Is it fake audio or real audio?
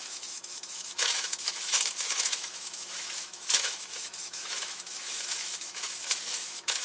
fake